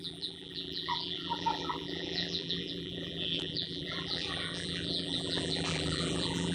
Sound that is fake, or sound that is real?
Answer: fake